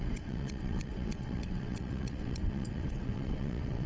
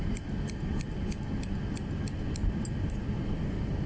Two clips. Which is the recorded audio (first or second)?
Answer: second